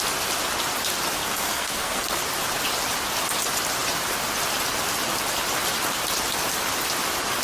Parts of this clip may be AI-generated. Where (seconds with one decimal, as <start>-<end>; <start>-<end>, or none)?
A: 1.2-2.2